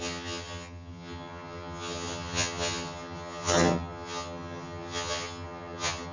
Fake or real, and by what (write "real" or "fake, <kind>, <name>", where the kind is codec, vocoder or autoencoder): fake, vocoder, HiFi-GAN